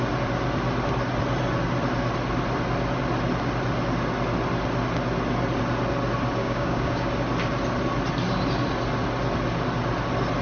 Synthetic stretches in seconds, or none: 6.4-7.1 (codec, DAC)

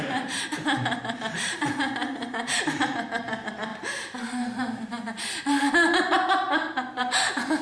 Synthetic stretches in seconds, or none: 0.0-7.6 (vocoder, BigVGAN v2)

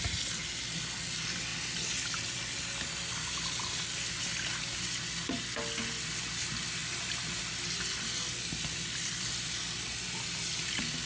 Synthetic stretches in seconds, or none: none

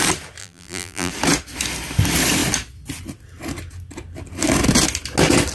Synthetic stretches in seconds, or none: 0.4-1.1 (vocoder, BigVGAN v2)

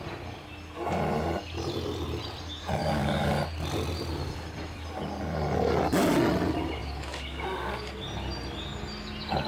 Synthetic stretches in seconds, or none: 2.8-3.4 (codec, DAC); 6.8-7.9

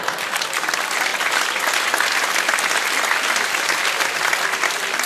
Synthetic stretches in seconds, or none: none

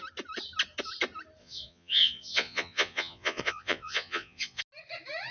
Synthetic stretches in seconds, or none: 1.4-4.6 (vocoder, Vocos)

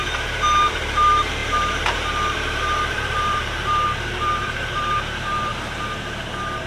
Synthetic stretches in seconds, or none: 0.0-5.5 (vocoder, BigVGAN v2)